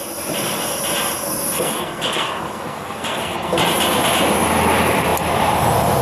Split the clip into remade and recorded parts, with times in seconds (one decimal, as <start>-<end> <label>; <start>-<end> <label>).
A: 0.0-1.2 recorded; 1.2-3.6 remade; 3.6-6.0 recorded